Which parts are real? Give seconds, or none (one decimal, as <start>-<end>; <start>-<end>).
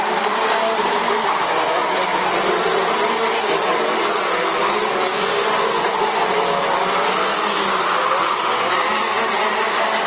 0.0-5.1; 6.2-10.1